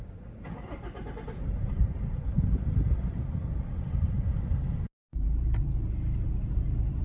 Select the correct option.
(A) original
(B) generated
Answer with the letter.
B